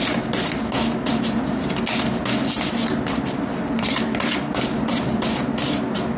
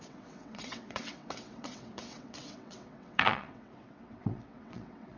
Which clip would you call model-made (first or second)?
second